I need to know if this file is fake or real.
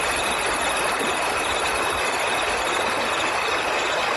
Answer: real